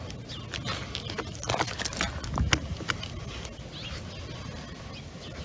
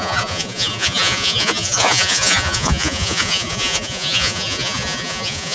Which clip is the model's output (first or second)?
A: second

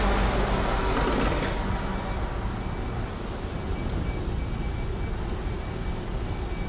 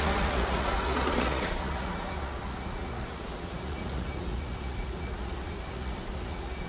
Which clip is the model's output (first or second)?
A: second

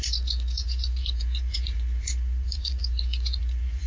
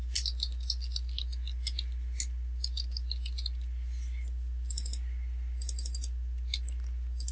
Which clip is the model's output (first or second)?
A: first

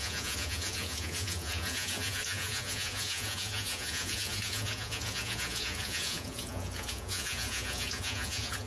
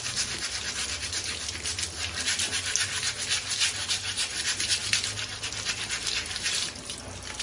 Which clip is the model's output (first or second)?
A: first